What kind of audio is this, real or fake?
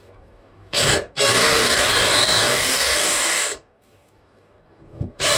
fake